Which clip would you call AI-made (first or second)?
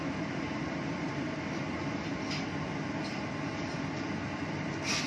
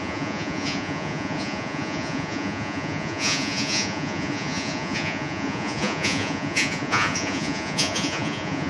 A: second